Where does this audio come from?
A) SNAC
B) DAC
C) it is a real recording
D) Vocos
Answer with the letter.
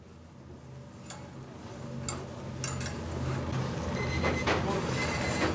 C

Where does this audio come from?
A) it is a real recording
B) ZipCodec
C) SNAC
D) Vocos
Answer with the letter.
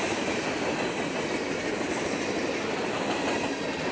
A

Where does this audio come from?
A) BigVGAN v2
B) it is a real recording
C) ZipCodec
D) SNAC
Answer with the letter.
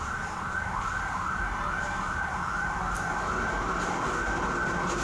B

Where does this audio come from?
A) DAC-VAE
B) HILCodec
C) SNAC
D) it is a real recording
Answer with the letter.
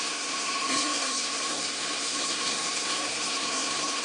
C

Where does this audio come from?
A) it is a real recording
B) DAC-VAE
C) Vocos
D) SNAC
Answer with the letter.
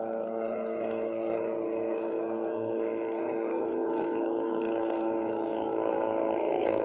D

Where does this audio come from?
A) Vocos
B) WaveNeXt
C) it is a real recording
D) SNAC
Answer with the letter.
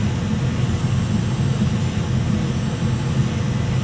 C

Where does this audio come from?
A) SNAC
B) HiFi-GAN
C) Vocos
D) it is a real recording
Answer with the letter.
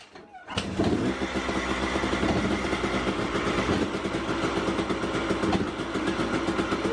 D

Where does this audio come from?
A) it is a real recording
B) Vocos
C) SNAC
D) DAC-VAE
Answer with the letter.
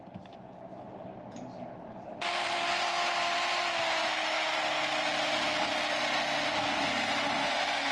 A